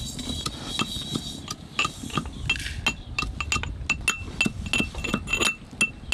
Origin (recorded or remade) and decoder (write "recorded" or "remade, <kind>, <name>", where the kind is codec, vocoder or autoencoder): recorded